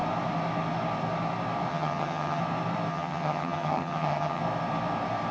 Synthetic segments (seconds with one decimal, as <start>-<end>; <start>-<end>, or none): 1.7-2.4; 2.9-4.4